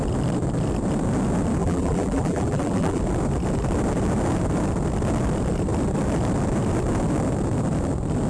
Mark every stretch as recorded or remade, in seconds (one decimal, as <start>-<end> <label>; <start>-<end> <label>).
0.0-1.6 recorded; 1.6-3.0 remade; 3.0-8.3 recorded

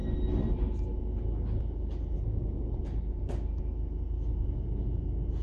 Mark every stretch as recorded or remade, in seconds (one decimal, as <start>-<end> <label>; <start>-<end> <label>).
0.0-5.4 recorded

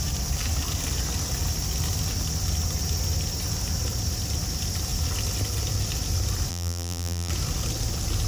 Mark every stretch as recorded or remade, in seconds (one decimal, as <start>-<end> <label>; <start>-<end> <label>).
0.0-6.5 recorded; 6.5-7.3 remade; 7.3-8.3 recorded

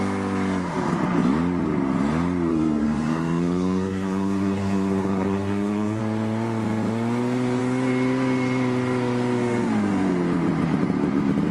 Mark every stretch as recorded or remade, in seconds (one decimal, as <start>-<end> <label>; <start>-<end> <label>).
0.0-2.5 recorded; 2.5-6.0 remade; 6.0-11.5 recorded